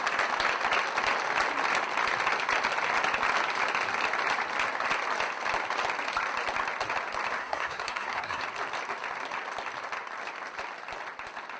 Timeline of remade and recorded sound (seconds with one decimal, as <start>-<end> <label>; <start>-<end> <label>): 0.0-7.4 recorded; 7.4-8.4 remade; 8.4-11.6 recorded